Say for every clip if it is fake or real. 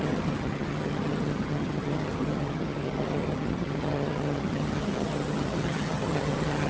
fake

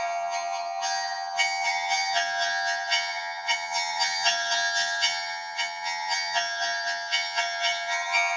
fake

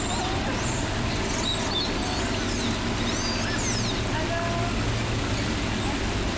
real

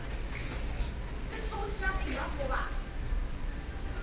real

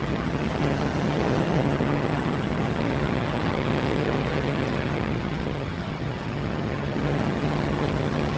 fake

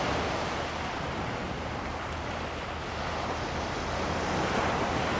real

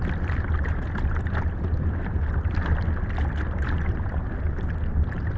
real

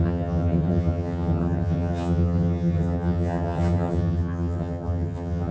fake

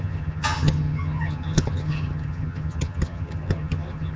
fake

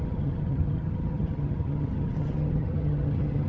fake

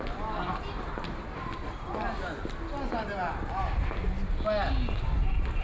real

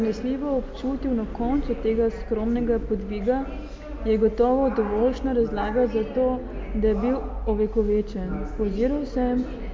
real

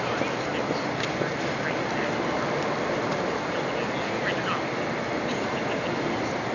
real